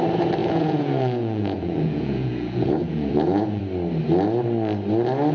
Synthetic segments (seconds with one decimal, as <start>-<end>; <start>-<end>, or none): 0.4-3.6